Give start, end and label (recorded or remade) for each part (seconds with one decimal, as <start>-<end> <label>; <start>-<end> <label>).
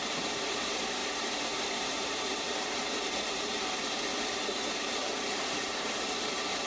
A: 0.0-6.7 remade